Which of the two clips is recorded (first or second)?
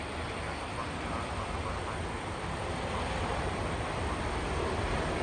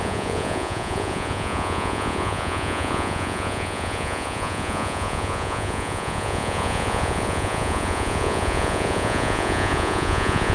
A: first